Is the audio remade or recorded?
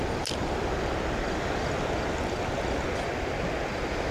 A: recorded